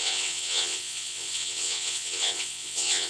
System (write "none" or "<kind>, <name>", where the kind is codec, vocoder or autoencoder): vocoder, WaveNeXt